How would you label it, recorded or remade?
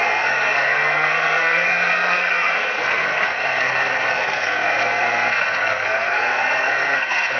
remade